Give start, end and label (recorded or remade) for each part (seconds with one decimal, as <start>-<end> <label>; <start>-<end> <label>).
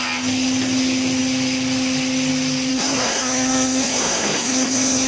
0.0-2.7 recorded; 2.7-5.1 remade